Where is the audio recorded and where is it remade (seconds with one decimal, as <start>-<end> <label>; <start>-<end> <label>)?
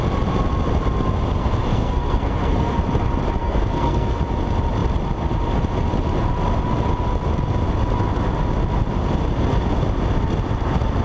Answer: 0.0-1.4 recorded; 1.4-2.8 remade; 2.8-3.4 recorded; 3.4-4.2 remade; 4.2-11.0 recorded